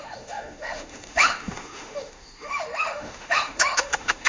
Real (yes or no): no